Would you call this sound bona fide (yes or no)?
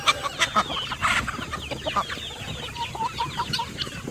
yes